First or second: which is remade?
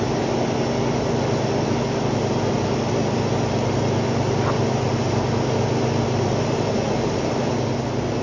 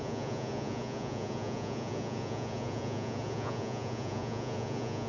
second